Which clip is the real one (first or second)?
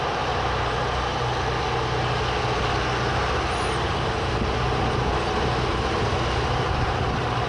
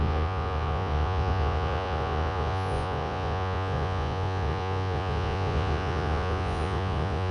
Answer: first